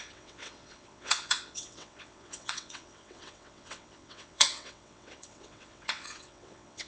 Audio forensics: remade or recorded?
remade